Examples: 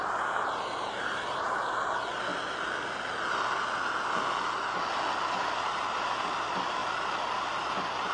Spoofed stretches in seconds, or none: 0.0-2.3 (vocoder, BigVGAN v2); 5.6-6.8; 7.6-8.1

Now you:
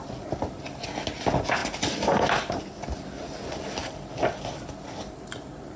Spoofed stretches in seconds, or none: none